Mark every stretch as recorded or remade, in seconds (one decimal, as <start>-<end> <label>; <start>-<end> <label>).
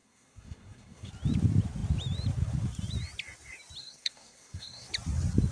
0.0-1.1 remade; 1.1-3.8 recorded; 3.8-4.9 remade; 4.9-5.5 recorded